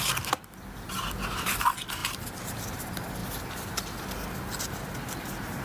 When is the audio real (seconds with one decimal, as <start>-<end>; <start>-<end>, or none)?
0.0-2.0; 2.8-5.6